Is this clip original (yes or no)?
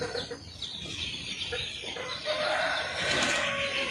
yes